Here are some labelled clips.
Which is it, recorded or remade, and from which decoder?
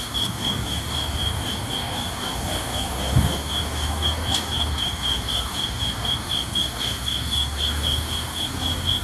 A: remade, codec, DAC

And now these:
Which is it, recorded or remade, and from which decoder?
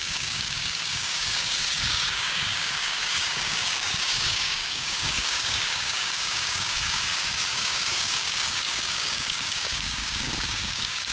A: remade, codec, DAC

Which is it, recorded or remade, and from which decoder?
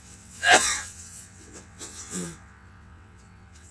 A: remade, vocoder, WaveNeXt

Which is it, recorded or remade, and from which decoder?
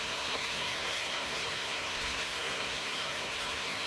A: remade, codec, SNAC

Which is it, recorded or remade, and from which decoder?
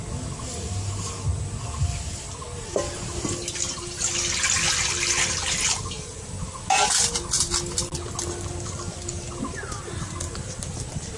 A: recorded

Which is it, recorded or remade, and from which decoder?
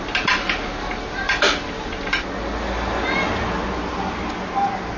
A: recorded